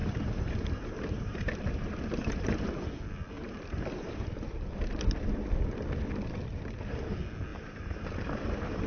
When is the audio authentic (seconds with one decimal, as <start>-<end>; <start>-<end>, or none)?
2.7-3.4; 5.5-7.5